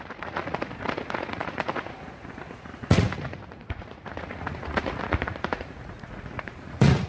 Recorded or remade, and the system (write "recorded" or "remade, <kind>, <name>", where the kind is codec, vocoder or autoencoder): remade, vocoder, Vocos